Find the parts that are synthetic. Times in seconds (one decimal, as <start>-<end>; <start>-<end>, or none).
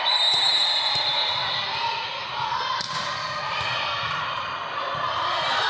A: 0.0-1.4; 4.8-5.7